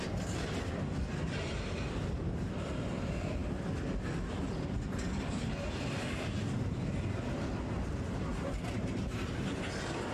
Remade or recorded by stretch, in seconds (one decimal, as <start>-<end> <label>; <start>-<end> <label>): 0.0-10.1 recorded